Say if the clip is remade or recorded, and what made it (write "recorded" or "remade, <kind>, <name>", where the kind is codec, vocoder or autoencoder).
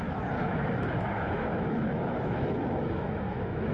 remade, autoencoder, DAC-VAE